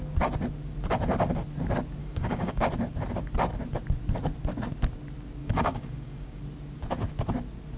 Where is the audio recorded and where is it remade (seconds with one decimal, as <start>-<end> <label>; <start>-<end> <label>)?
0.0-2.0 recorded; 2.0-2.7 remade; 2.7-5.4 recorded; 5.4-6.4 remade; 6.4-7.8 recorded